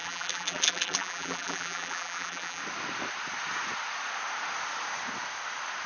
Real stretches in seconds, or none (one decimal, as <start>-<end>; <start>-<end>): 2.6-5.9

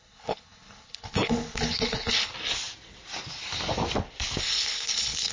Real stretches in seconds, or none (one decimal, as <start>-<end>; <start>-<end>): 2.3-4.4

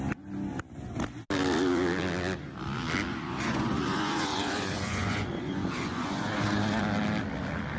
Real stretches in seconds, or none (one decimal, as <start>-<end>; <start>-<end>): 0.0-3.1; 6.8-7.8